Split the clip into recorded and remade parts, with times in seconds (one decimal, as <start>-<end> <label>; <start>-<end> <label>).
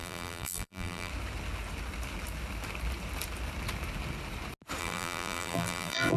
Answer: 0.0-1.1 remade; 1.1-4.8 recorded; 4.8-6.2 remade